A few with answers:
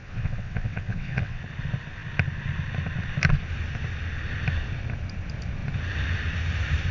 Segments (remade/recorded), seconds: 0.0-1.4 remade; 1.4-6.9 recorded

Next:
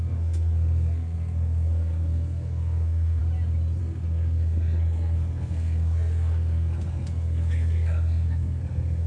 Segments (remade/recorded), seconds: 0.0-3.2 remade; 3.2-3.8 recorded; 3.8-9.1 remade

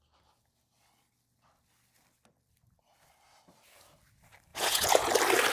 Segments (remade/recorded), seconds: 0.0-4.5 recorded; 4.5-5.1 remade; 5.1-5.5 recorded